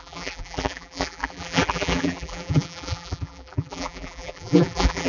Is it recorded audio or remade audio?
remade